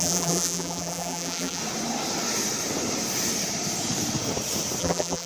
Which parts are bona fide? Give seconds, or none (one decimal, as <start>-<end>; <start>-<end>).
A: 1.6-4.8